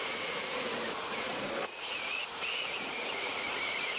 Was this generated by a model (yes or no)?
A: yes